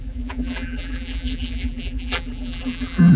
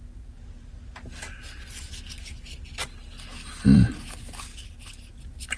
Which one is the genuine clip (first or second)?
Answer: second